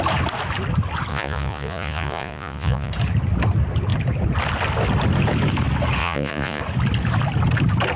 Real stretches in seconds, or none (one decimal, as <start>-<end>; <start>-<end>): 0.0-1.1; 2.9-6.0; 6.6-8.0

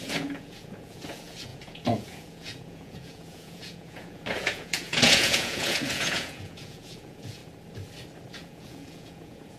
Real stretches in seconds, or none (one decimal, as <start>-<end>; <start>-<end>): 7.4-8.3